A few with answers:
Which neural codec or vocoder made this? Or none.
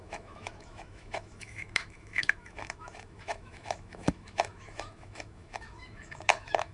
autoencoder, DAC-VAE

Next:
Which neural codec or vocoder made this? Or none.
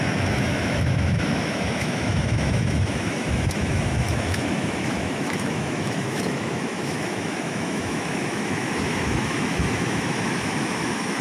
autoencoder, DAC-VAE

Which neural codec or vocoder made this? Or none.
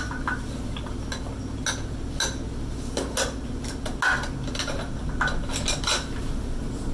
none